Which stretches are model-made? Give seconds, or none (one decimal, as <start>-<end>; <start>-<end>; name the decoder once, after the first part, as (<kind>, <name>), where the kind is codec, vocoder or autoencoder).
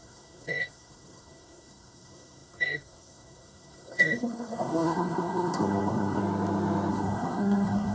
0.0-6.2 (codec, SNAC); 6.9-7.9